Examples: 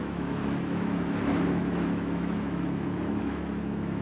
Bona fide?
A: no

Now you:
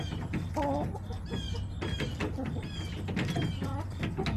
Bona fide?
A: yes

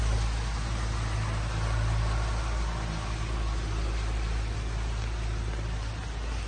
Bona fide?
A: yes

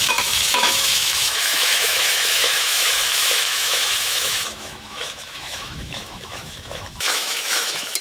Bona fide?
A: no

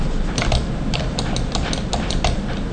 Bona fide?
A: yes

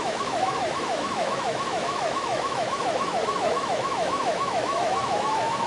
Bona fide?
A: no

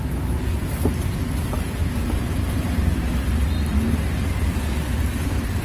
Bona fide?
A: yes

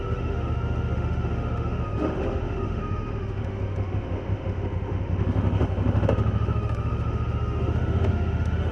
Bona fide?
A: no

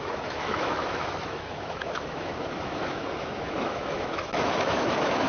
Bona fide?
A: no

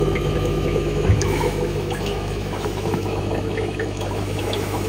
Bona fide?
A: no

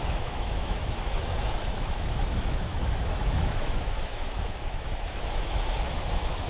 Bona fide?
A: no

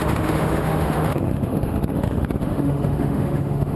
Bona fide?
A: no